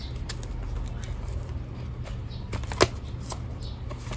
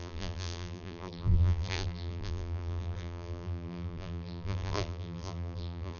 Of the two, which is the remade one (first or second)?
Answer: second